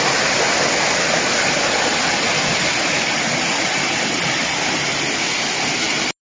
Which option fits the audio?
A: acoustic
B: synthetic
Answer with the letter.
A